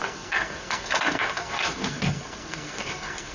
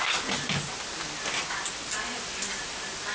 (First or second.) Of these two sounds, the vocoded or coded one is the first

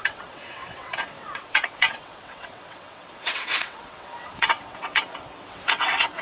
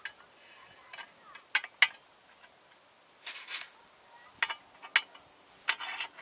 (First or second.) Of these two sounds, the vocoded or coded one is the first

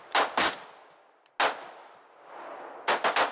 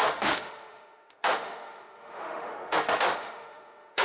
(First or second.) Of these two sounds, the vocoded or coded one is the second